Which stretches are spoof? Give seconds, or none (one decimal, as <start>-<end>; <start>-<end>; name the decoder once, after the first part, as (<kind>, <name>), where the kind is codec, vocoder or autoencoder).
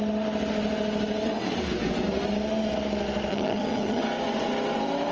3.3-4.0 (vocoder, HiFi-GAN)